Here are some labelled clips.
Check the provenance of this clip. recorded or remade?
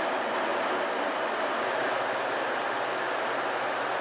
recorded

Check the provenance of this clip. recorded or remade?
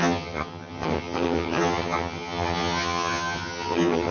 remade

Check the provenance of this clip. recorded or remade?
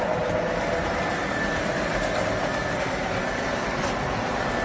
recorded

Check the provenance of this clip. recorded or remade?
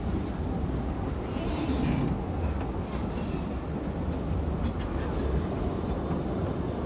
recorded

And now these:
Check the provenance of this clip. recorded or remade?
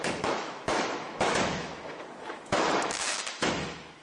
remade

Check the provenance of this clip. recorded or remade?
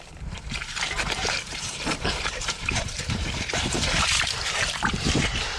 remade